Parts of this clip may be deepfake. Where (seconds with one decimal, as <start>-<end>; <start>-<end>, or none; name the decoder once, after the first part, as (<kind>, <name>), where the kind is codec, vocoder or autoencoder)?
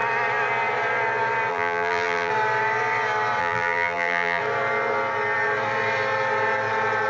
1.5-2.3 (vocoder, BigVGAN v2); 3.4-4.4